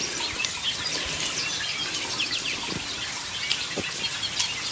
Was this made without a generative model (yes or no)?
yes